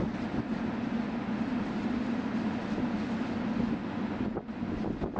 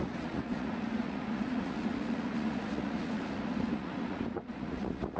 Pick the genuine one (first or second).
first